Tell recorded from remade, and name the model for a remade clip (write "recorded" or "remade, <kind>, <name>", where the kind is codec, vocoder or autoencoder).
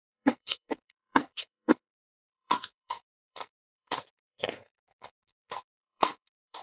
remade, codec, SNAC